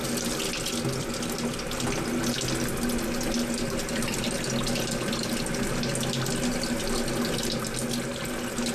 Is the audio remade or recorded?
recorded